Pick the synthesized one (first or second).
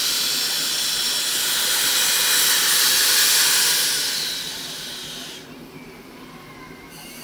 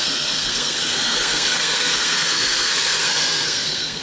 second